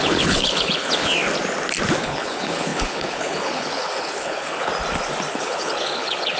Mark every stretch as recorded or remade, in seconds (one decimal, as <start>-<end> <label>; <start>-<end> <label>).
0.0-1.1 remade; 1.1-2.0 recorded; 2.0-4.7 remade; 4.7-5.3 recorded; 5.3-6.4 remade